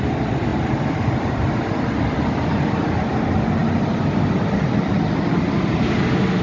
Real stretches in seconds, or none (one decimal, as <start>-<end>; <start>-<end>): none